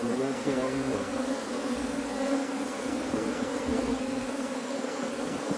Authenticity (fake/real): fake